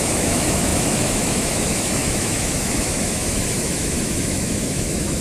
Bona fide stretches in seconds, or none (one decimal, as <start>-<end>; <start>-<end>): none